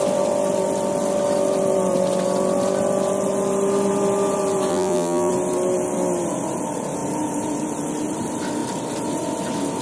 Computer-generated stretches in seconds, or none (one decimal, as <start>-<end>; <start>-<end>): 4.7-5.3